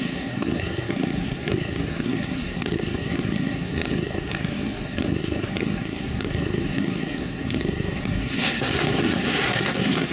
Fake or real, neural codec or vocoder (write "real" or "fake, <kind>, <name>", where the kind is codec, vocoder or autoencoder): fake, codec, SNAC